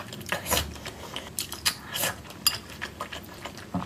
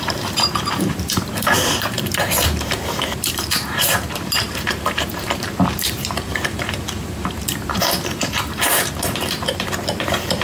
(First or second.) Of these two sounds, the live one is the first